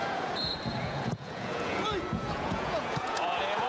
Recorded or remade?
remade